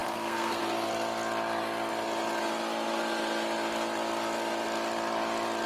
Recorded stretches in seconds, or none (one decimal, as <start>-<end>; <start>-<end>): 0.6-5.7